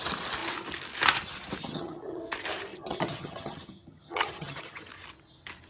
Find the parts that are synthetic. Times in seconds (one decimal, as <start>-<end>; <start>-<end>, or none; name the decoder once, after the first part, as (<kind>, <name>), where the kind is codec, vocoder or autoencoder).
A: 1.6-2.2 (vocoder, HiFi-GAN); 2.7-4.9